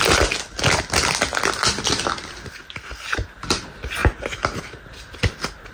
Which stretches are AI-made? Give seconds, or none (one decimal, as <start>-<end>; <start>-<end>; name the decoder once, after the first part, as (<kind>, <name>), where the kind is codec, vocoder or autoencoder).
1.9-4.0 (vocoder, BigVGAN v2); 5.3-5.7